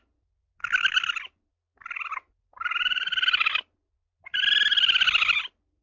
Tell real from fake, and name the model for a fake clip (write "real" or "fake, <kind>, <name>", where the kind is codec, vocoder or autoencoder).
real